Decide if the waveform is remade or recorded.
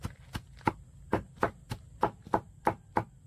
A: remade